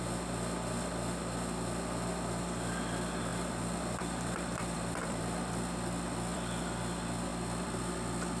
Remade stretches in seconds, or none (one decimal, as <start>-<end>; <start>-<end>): 3.3-6.6; 7.3-7.8